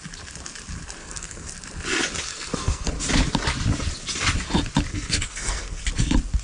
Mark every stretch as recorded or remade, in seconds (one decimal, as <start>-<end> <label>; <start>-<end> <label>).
0.0-1.0 recorded; 1.0-1.5 remade; 1.5-2.3 recorded; 2.3-2.9 remade; 2.9-4.9 recorded; 4.9-5.8 remade; 5.8-6.4 recorded